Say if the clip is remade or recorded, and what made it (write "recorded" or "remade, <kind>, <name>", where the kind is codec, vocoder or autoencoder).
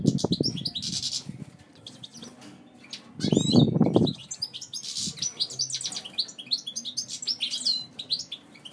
recorded